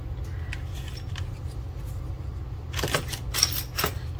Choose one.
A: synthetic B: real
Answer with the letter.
B